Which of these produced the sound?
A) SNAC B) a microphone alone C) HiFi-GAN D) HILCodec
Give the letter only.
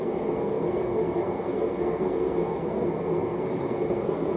A